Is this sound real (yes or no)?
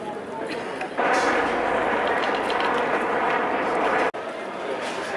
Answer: yes